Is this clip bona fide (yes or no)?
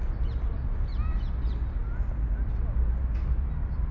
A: yes